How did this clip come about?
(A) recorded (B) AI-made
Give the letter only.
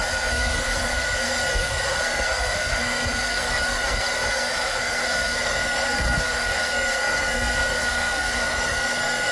B